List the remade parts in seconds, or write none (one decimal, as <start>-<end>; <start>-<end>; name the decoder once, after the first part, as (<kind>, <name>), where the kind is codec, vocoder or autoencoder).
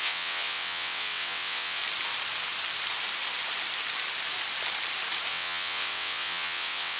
0.0-1.8 (vocoder, WaveNeXt); 5.3-7.0